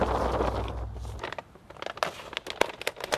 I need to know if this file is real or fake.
real